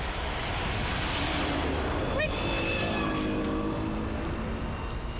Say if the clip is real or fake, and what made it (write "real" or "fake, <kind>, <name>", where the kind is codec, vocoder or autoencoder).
real